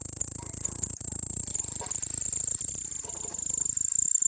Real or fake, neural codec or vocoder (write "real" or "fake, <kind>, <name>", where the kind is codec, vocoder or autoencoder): real